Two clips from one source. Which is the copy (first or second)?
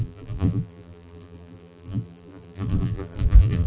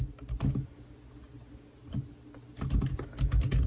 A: first